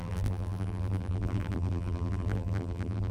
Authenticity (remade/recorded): remade